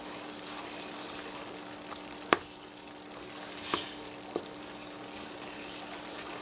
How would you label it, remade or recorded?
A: recorded